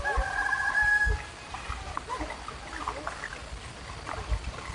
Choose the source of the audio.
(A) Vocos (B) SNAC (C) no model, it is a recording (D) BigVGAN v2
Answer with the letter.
D